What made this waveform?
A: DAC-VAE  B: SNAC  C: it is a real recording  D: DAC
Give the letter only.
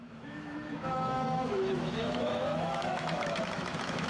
A